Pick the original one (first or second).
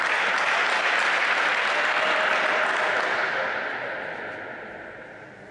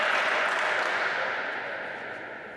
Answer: first